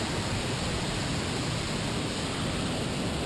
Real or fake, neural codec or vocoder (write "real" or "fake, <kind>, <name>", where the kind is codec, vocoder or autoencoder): real